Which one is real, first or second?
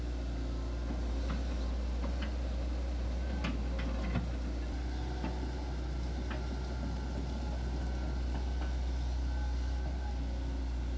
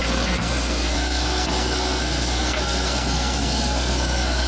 first